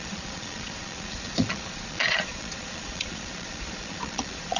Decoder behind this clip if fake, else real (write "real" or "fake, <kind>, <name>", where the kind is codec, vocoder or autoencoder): fake, vocoder, Vocos